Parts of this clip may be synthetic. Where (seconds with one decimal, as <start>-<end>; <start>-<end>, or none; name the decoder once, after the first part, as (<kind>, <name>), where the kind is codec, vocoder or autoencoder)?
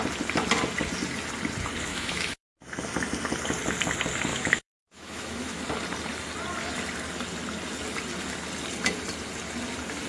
1.9-2.5 (autoencoder, DAC-VAE); 4.3-5.6